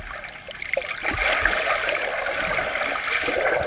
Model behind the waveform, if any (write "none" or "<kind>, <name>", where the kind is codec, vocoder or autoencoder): none